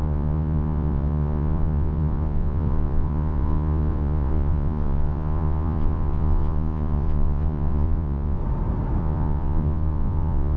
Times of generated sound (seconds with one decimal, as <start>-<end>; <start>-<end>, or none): 0.0-8.4; 9.0-10.6